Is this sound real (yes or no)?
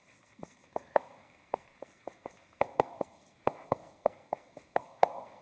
no